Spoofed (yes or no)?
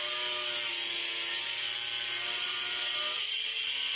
no